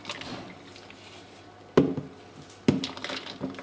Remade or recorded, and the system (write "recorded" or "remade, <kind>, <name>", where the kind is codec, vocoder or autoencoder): recorded